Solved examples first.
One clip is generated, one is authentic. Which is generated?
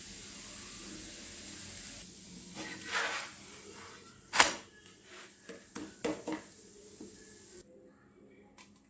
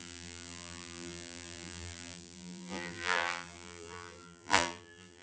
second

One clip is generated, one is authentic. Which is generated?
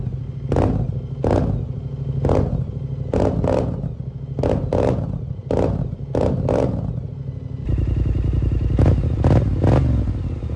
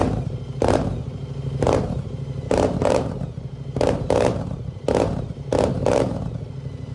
second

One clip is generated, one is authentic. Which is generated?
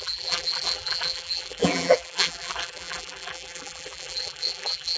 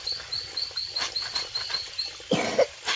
first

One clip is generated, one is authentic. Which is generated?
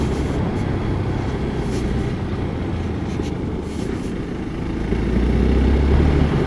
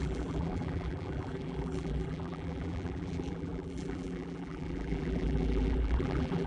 second